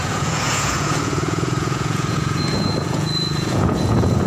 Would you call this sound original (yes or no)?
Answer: no